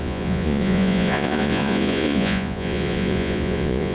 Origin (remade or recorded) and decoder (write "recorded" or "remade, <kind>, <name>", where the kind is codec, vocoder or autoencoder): remade, vocoder, Vocos